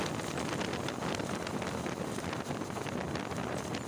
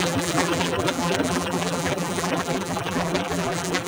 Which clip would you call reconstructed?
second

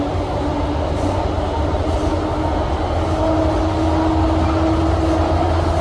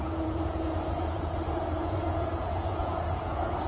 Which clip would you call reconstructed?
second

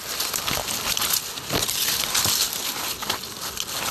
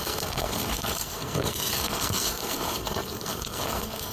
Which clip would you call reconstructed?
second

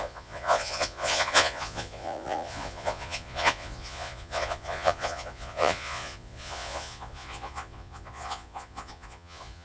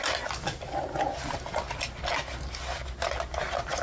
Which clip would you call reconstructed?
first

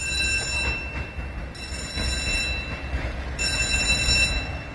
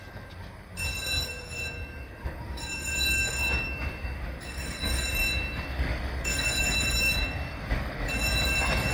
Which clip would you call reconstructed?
second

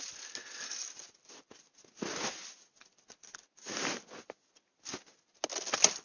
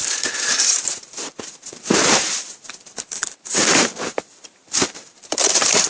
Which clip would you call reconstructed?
second